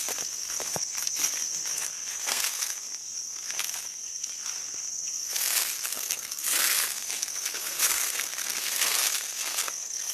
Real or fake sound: fake